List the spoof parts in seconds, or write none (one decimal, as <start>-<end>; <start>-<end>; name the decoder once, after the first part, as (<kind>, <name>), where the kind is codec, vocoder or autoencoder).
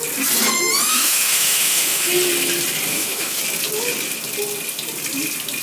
0.9-2.1 (autoencoder, DAC-VAE); 2.9-3.4